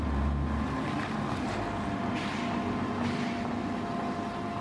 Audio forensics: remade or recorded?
recorded